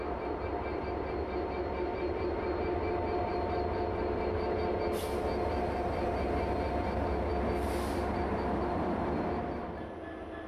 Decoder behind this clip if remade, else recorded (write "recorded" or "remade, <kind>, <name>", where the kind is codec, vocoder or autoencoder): recorded